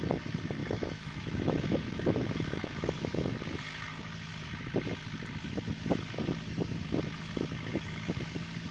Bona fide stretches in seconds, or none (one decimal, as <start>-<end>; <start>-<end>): 4.3-7.0